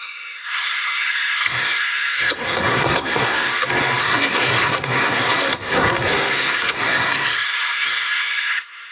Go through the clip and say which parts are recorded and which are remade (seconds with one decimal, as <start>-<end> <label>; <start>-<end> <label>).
0.0-3.5 remade; 3.5-4.0 recorded; 4.0-8.9 remade

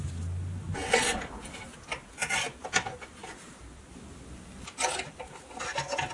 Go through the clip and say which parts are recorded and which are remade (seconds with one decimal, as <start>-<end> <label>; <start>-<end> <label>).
0.0-6.1 recorded

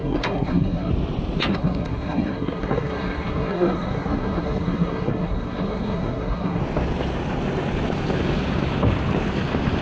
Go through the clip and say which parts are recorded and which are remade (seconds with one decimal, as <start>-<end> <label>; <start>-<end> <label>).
0.0-0.9 remade; 0.9-1.5 recorded; 1.5-6.6 remade; 6.6-9.8 recorded